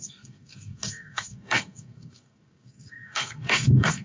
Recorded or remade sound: remade